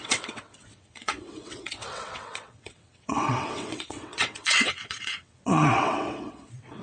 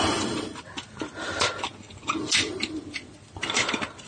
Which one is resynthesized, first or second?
first